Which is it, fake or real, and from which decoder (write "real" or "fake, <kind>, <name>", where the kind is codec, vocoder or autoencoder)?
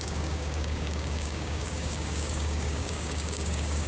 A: fake, codec, DAC